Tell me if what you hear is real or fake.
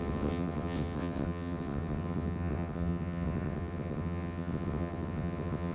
fake